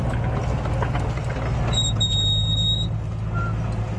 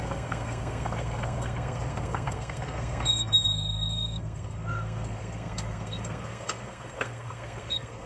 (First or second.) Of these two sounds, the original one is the first